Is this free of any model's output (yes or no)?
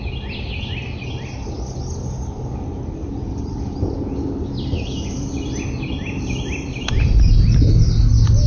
yes